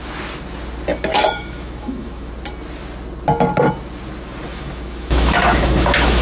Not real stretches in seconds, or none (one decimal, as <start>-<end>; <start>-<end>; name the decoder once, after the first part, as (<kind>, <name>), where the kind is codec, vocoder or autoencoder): 1.1-2.3 (autoencoder, DAC-VAE); 4.5-6.2